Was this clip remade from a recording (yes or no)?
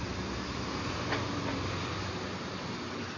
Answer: yes